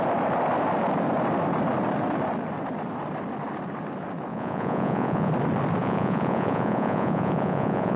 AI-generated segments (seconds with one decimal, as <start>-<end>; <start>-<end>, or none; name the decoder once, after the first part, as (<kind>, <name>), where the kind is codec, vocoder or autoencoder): 4.3-5.3 (vocoder, Vocos); 5.8-8.0